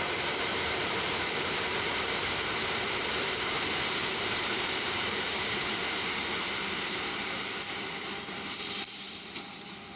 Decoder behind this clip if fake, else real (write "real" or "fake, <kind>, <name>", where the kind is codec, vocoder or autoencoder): fake, vocoder, BigVGAN v2